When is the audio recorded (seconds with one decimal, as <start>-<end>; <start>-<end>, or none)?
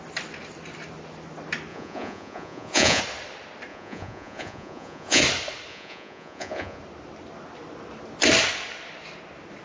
0.0-1.7; 3.0-3.7; 5.2-5.7; 6.8-9.6